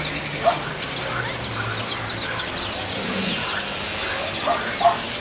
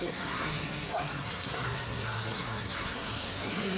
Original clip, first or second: first